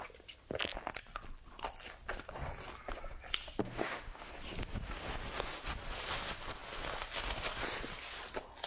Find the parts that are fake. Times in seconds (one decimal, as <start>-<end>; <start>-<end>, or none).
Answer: 3.6-4.3